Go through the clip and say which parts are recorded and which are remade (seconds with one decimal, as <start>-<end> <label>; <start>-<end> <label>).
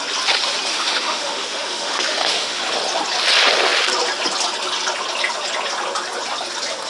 0.0-0.7 recorded; 0.7-2.6 remade; 2.6-6.9 recorded